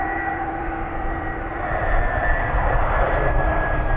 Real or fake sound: fake